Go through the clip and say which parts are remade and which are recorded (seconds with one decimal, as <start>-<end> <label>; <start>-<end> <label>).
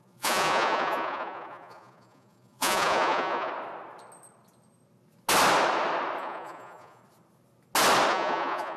0.0-3.5 remade; 3.5-6.2 recorded; 6.2-7.0 remade; 7.0-8.1 recorded; 8.1-8.8 remade